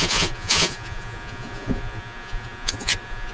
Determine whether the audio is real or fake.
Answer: fake